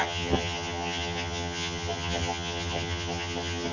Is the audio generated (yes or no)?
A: yes